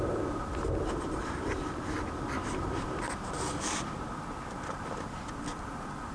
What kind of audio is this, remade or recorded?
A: remade